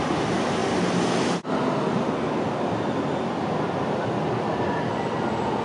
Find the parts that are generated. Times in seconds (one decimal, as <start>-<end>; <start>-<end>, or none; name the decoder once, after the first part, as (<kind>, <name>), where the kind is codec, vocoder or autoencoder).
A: none